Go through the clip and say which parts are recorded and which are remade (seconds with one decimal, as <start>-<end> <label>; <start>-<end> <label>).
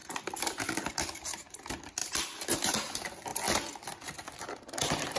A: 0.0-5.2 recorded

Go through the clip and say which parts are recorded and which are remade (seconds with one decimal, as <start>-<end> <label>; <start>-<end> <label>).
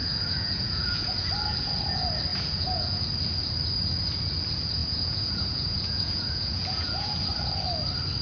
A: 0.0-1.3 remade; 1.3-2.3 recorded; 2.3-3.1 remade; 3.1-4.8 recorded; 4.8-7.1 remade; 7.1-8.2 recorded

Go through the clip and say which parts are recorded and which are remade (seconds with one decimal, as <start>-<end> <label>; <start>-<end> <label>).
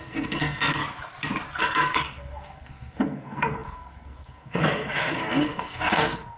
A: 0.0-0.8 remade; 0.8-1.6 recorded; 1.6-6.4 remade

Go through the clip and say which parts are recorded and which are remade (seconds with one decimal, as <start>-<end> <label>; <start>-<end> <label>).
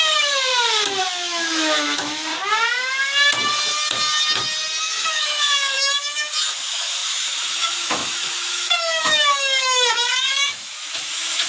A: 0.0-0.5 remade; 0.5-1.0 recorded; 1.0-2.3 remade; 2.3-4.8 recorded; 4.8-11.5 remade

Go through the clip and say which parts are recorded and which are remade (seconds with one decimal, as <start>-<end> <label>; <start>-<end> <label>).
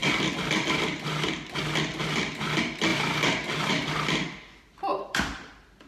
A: 0.0-4.9 recorded; 4.9-5.5 remade; 5.5-5.9 recorded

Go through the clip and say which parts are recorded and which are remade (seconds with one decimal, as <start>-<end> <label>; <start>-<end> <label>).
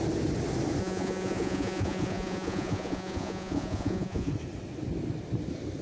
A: 0.0-0.8 recorded; 0.8-4.3 remade; 4.3-5.8 recorded